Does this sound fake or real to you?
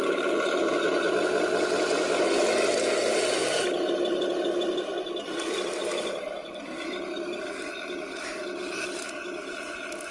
real